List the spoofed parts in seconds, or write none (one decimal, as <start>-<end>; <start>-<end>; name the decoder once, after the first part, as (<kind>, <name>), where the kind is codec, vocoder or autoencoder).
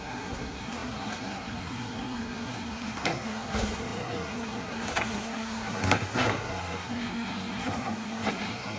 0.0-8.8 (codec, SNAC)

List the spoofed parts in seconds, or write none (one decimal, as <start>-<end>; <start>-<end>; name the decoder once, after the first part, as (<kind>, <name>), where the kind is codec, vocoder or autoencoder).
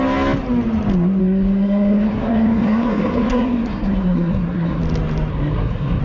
1.2-4.8 (codec, SNAC); 5.3-6.0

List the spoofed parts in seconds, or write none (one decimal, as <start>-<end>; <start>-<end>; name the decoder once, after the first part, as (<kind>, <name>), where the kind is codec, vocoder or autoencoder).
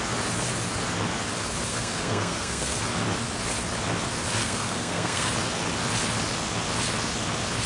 1.7-2.8 (codec, SNAC); 4.4-5.3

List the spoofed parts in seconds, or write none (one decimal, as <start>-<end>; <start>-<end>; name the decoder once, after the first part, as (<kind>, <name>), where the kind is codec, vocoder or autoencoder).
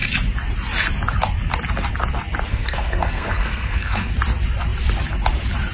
2.5-4.1 (codec, SNAC)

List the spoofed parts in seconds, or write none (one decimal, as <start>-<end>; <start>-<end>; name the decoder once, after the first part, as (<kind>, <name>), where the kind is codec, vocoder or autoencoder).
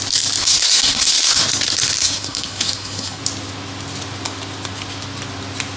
0.4-1.4 (codec, SNAC); 2.0-3.2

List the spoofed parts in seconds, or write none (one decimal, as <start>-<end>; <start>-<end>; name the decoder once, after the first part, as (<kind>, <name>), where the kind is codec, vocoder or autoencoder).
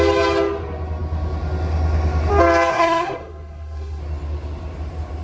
2.7-4.0 (codec, SNAC)